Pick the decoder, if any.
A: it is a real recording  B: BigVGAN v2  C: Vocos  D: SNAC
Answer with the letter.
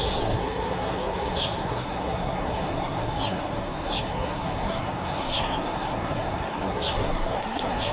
D